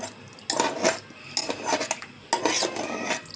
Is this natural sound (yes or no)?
yes